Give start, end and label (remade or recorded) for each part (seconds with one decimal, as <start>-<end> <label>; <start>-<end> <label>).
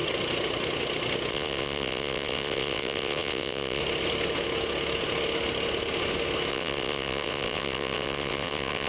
0.0-1.3 recorded; 1.3-3.8 remade; 3.8-6.5 recorded; 6.5-8.9 remade